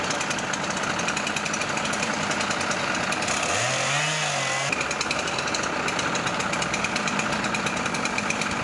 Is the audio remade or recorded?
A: recorded